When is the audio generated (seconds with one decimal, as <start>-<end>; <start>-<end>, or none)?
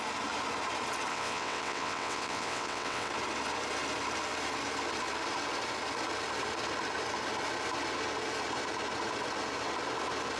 1.1-3.1